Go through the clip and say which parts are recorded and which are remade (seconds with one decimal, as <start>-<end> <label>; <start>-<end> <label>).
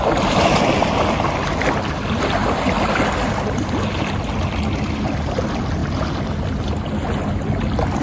0.0-8.0 recorded